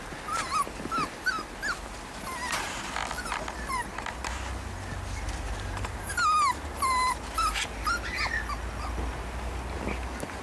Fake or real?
real